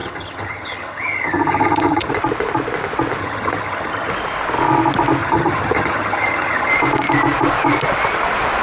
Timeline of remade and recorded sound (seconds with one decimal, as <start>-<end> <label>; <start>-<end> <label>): 0.0-2.1 remade; 2.1-3.2 recorded; 3.2-4.1 remade; 4.1-5.2 recorded; 5.2-6.7 remade; 6.7-8.6 recorded